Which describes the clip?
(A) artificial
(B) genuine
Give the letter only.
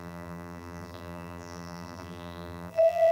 A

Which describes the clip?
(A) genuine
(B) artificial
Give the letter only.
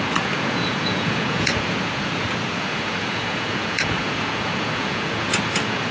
B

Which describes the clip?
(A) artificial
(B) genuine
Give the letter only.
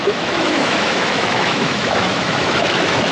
A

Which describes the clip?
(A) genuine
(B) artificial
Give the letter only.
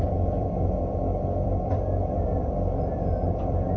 B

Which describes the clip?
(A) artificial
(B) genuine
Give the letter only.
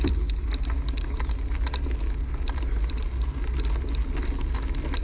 B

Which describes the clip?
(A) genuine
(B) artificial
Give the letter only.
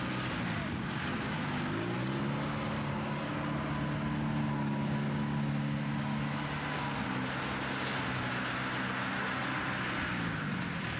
A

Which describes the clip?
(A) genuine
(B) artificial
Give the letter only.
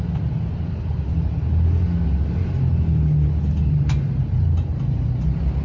A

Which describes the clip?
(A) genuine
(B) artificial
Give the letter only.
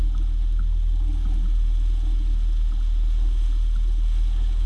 A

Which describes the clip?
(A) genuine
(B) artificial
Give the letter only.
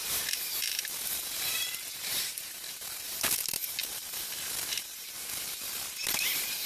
B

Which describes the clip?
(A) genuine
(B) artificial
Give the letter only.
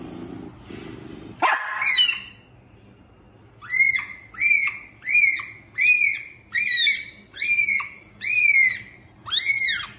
A